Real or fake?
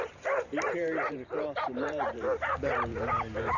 fake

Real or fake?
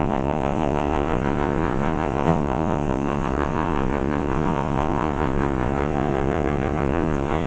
fake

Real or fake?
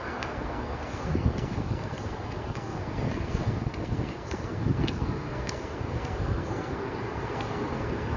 fake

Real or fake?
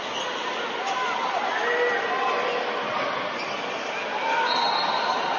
real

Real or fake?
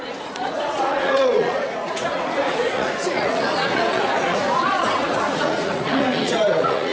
fake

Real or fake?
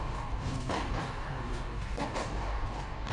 fake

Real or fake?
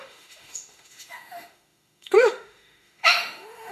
fake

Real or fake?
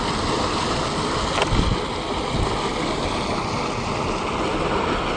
real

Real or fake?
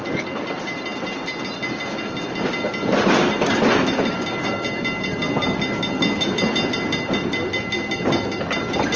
real